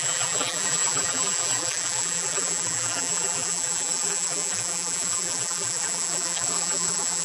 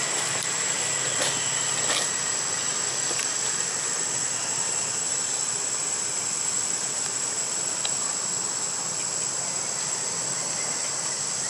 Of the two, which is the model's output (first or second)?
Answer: first